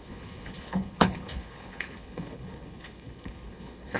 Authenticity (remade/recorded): remade